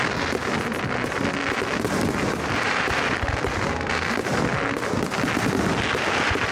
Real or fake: real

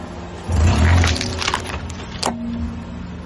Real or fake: real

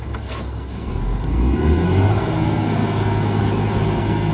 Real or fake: fake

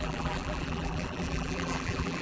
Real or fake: fake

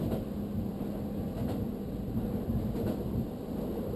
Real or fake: real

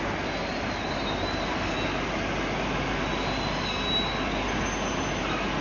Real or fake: real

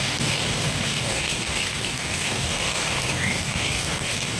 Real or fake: fake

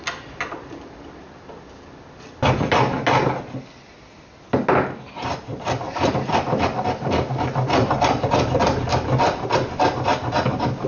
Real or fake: real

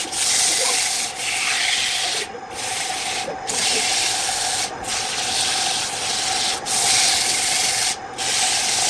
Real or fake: real